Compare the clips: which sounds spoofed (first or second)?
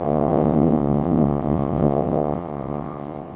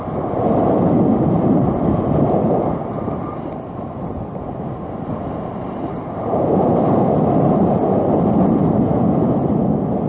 first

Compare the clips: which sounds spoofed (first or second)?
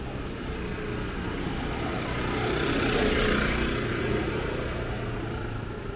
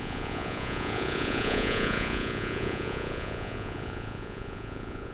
second